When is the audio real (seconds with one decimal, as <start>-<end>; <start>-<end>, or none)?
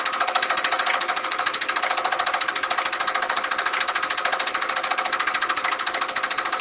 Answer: 0.0-1.1; 1.8-6.6